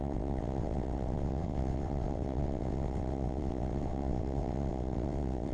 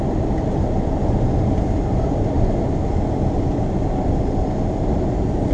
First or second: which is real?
second